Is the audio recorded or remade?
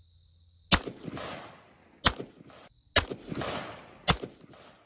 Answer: recorded